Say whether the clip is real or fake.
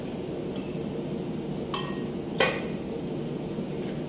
real